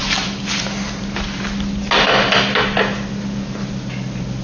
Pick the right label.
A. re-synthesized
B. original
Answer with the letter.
B